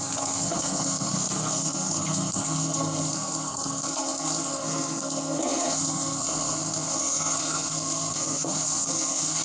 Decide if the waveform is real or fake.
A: fake